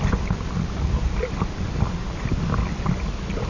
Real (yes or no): yes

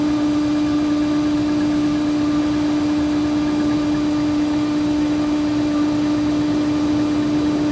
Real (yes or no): yes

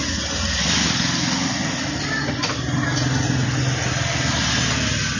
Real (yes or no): yes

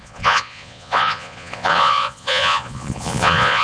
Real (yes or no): no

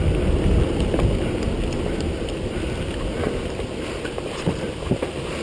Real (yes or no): yes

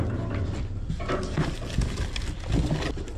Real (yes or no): yes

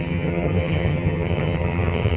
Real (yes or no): no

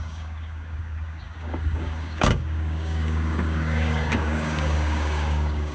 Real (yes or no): no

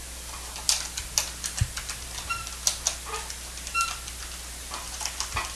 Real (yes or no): yes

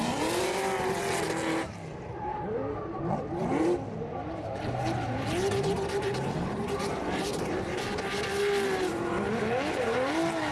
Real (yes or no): yes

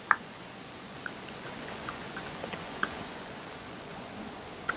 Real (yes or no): no